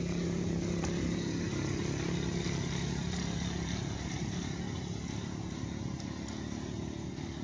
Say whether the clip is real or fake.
real